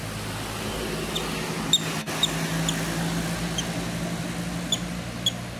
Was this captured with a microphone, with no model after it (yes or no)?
yes